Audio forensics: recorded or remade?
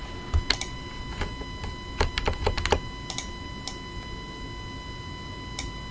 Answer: recorded